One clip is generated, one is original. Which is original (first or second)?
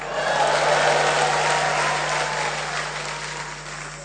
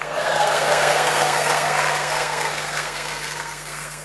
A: first